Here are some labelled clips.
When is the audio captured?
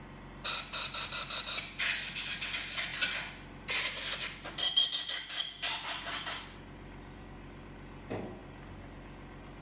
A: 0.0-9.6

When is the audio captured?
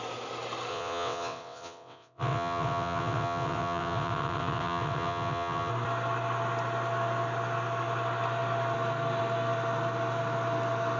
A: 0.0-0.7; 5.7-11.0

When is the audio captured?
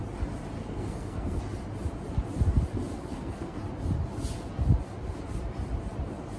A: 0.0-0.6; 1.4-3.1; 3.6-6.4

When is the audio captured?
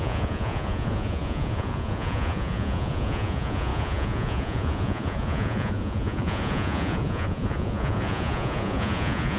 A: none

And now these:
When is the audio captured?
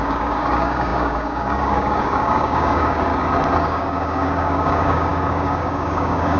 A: 3.1-3.6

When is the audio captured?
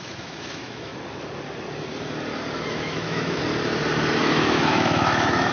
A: 0.9-2.7; 3.4-4.2